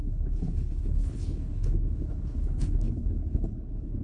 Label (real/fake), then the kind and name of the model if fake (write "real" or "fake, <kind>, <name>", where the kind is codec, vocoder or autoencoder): fake, codec, HILCodec